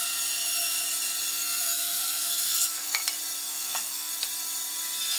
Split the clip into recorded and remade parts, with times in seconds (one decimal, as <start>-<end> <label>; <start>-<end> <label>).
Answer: 0.0-1.3 recorded; 1.3-3.0 remade; 3.0-3.4 recorded; 3.4-4.1 remade; 4.1-5.2 recorded